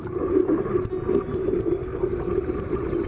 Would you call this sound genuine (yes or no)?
yes